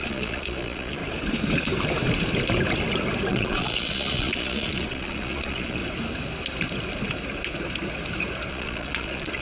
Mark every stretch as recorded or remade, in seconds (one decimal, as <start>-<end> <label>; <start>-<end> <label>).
0.0-1.0 remade; 1.0-3.3 recorded; 3.3-5.8 remade; 5.8-8.5 recorded; 8.5-9.4 remade